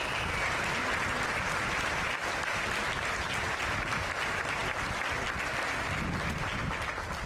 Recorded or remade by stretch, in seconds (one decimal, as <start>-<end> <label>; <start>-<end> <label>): 0.0-7.3 recorded